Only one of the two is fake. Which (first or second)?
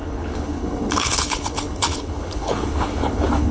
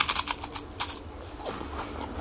first